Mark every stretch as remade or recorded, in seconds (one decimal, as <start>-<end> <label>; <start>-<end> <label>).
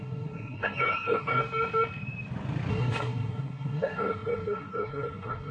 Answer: 0.0-1.4 remade; 1.4-2.7 recorded; 2.7-5.5 remade